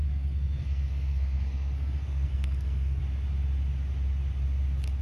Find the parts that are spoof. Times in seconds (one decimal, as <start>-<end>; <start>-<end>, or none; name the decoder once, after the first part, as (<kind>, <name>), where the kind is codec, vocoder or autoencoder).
0.0-3.0 (codec, SNAC)